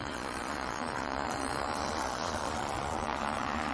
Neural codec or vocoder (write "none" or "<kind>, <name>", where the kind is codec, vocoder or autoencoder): vocoder, Vocos